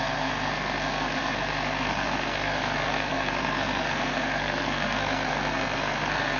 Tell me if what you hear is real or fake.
fake